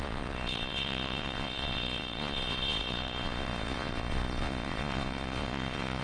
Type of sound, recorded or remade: remade